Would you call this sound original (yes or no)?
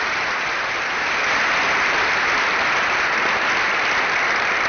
no